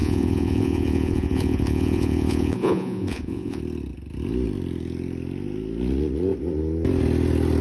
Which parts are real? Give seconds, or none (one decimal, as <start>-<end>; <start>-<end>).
3.6-7.6